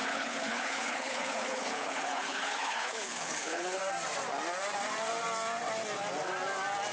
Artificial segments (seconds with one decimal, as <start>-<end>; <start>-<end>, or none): 0.0-3.8